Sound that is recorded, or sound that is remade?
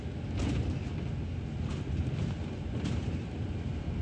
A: recorded